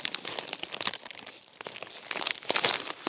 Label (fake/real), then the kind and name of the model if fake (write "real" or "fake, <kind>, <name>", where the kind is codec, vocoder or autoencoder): real